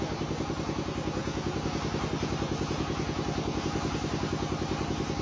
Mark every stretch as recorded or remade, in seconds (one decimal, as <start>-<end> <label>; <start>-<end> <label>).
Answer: 0.0-5.2 recorded